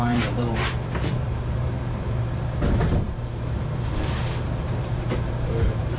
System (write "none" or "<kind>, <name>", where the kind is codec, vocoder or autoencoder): vocoder, BigVGAN v2